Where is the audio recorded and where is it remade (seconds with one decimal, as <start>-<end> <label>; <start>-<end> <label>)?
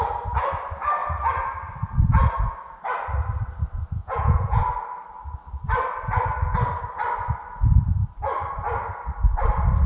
0.0-4.0 recorded; 4.0-4.6 remade; 4.6-9.9 recorded